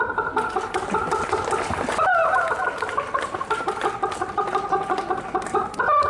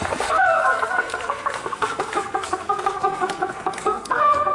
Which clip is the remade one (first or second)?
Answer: second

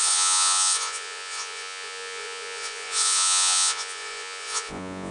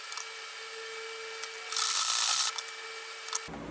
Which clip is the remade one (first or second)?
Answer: first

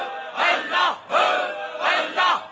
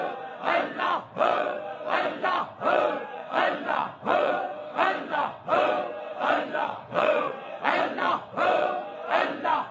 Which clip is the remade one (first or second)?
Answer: second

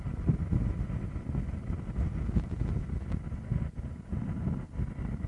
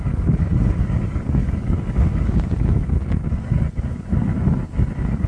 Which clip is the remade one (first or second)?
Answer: second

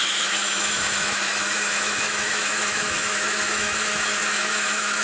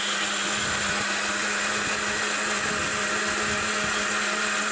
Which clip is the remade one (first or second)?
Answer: first